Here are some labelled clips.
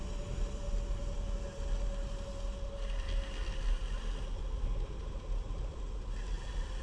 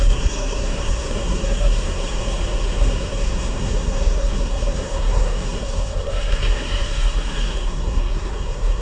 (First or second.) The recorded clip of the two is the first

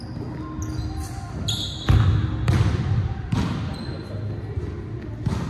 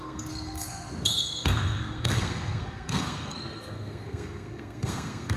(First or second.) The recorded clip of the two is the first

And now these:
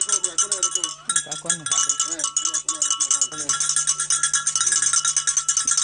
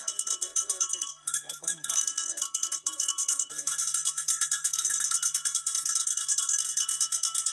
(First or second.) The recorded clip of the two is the first